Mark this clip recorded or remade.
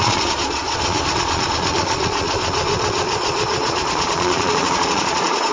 remade